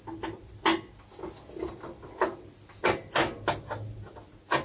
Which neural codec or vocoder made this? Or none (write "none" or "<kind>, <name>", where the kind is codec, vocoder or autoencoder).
none